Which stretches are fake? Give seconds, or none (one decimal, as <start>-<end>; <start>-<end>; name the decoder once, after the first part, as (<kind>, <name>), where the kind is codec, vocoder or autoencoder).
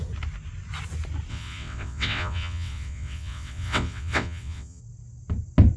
1.3-4.8 (vocoder, WaveNeXt)